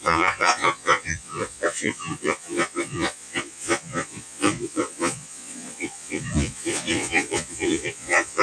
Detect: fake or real fake